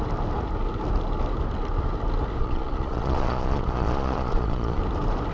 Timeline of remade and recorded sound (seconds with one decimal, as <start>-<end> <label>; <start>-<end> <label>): 0.0-2.4 recorded; 2.4-4.8 remade; 4.8-5.3 recorded